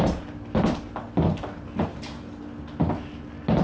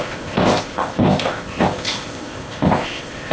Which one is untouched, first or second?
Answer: first